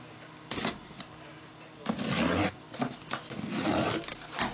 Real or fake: real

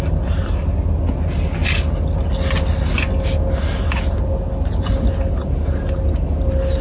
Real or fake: real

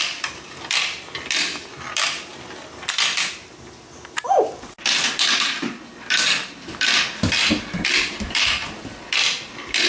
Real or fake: real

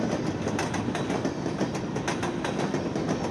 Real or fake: real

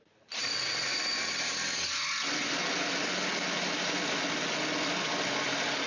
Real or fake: real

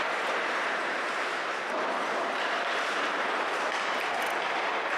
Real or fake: real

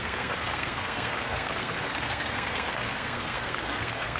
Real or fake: fake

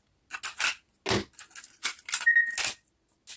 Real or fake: real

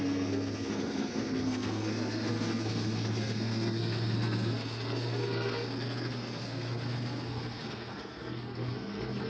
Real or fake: fake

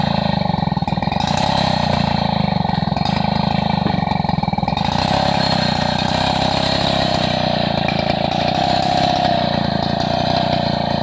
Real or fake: real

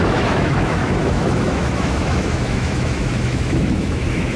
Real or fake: fake